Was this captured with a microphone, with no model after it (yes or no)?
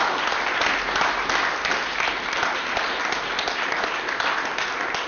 yes